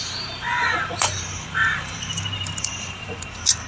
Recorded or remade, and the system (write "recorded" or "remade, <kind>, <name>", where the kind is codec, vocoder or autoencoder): remade, vocoder, BigVGAN v2